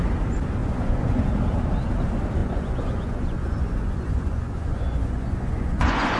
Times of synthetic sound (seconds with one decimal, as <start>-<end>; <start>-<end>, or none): 0.6-1.2; 2.4-6.2